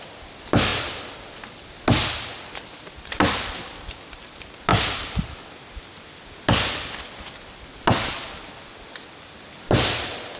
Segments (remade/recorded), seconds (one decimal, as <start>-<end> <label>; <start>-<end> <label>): 0.0-10.4 recorded